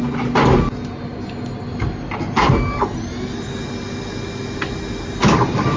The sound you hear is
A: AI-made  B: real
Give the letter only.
B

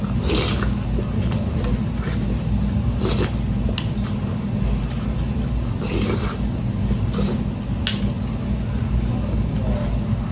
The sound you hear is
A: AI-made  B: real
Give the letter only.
B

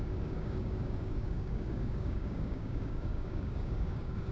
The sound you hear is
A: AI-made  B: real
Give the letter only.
A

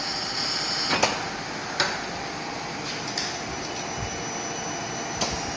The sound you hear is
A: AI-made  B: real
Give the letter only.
B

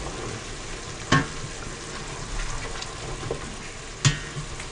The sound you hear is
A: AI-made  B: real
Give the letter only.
B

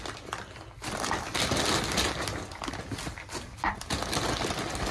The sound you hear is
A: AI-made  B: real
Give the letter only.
B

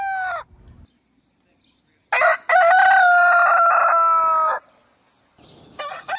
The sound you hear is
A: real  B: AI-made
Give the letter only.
A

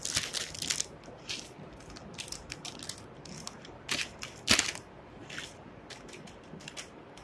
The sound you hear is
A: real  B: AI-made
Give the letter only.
A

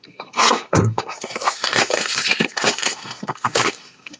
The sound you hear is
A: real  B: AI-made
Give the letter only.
B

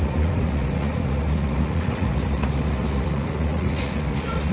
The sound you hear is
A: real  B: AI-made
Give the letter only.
B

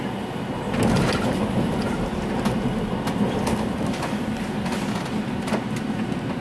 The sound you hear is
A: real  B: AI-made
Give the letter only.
A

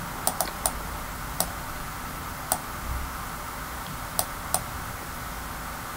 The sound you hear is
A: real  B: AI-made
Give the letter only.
A